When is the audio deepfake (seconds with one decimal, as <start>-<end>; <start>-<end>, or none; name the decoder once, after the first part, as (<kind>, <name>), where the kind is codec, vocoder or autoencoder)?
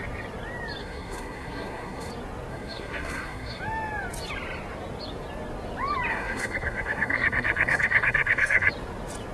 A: 0.8-2.1 (codec, SNAC); 2.5-3.6; 6.1-8.7